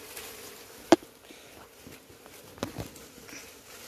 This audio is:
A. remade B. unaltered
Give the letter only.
B